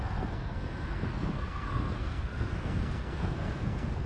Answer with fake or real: fake